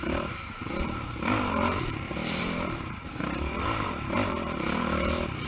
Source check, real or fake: fake